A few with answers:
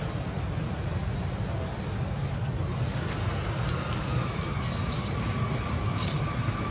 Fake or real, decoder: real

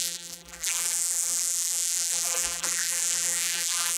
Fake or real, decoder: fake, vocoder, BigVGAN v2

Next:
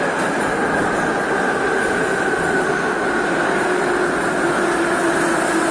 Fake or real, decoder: real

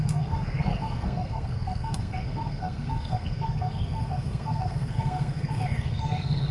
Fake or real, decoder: fake, codec, SNAC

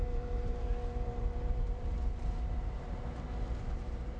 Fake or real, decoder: fake, vocoder, BigVGAN v2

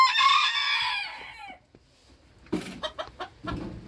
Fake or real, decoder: real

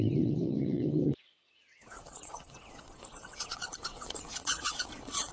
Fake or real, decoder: fake, vocoder, WaveNeXt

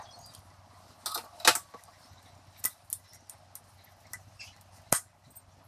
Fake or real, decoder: real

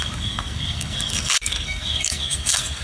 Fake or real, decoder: fake, codec, SNAC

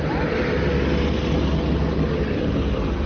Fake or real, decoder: real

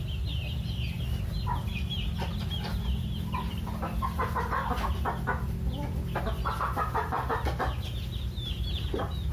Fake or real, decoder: real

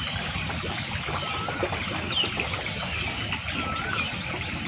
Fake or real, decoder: real